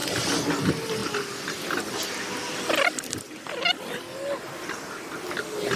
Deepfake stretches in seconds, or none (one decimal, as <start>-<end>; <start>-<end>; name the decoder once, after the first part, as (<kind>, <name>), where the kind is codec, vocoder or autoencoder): none